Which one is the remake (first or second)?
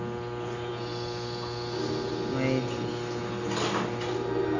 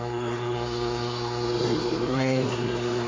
second